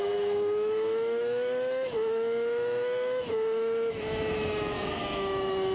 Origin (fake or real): fake